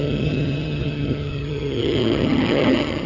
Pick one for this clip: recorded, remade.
remade